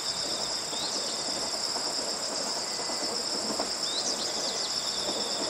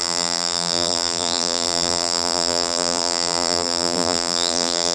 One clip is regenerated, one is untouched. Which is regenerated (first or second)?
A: second